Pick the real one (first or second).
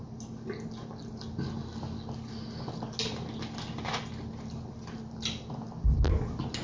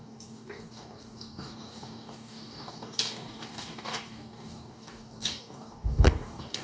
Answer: first